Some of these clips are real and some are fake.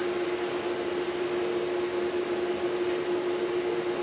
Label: real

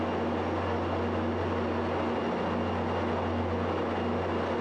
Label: real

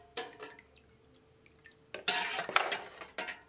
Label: real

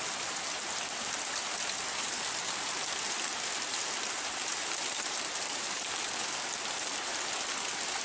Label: real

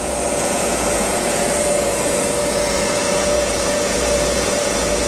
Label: fake